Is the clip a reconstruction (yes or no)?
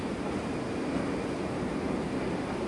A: no